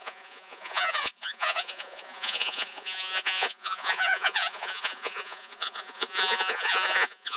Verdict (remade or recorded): remade